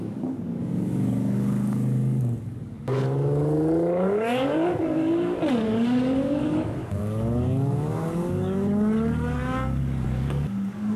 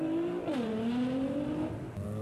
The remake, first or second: first